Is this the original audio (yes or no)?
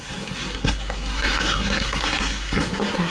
no